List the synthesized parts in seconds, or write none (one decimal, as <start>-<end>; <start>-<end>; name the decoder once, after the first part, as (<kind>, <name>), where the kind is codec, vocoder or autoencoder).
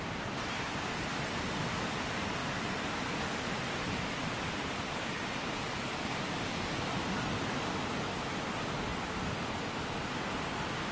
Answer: 0.0-10.9 (vocoder, BigVGAN v2)